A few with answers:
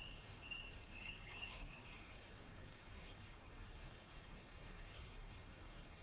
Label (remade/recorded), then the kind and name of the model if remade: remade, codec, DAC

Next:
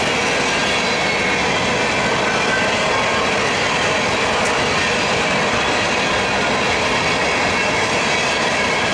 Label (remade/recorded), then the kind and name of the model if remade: recorded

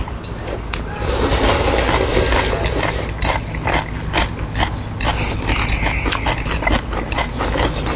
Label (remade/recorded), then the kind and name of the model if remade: recorded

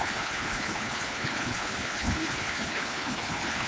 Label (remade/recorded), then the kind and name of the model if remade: remade, codec, HILCodec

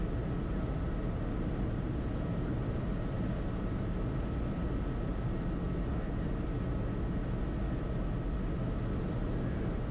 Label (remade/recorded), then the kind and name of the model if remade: recorded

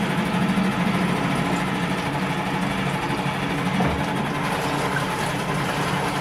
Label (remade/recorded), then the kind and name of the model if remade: recorded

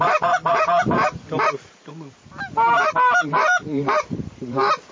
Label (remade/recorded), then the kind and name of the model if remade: remade, vocoder, BigVGAN v2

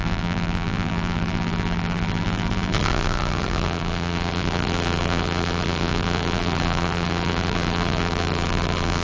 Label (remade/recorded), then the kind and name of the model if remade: remade, vocoder, BigVGAN v2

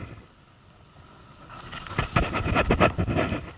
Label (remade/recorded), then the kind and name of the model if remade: recorded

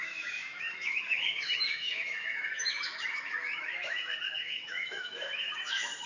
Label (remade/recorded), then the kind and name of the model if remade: remade, autoencoder, DAC-VAE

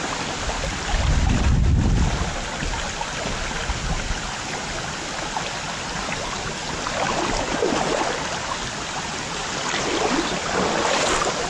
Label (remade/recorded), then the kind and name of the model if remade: recorded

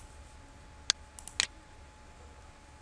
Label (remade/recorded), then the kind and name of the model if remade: recorded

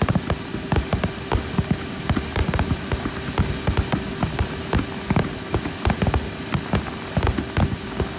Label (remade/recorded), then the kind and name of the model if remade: recorded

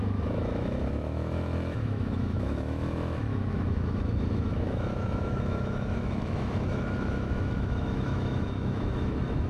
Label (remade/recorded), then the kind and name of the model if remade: remade, autoencoder, DAC-VAE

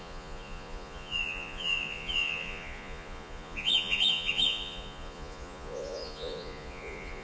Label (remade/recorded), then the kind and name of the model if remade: remade, vocoder, Vocos